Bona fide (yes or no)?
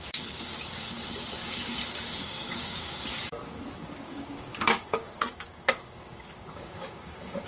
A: no